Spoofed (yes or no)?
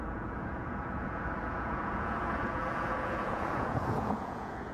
yes